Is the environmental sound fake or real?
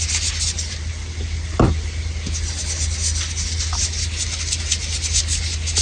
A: real